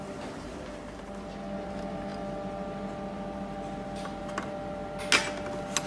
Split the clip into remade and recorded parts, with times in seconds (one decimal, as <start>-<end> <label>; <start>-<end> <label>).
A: 0.0-5.9 recorded